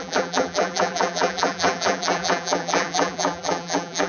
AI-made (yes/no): yes